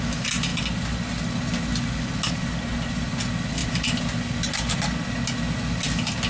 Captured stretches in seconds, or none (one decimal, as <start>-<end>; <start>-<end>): 0.0-6.3